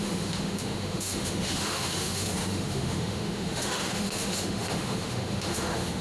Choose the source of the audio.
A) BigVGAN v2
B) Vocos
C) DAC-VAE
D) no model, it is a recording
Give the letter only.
C